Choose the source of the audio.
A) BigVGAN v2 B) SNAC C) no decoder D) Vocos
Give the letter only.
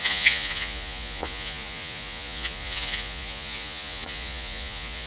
D